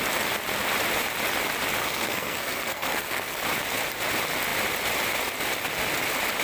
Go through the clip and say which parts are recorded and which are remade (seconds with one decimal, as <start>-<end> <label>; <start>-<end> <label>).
0.0-1.8 recorded; 1.8-3.4 remade; 3.4-6.4 recorded